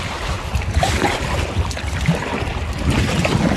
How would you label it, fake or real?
real